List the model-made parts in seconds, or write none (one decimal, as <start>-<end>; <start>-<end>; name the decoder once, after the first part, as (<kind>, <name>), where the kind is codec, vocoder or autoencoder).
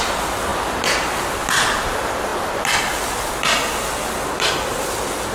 none